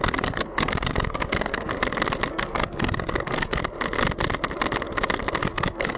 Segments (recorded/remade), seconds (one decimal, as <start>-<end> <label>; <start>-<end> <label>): 0.0-1.7 remade; 1.7-2.3 recorded; 2.3-3.6 remade; 3.6-5.4 recorded; 5.4-6.0 remade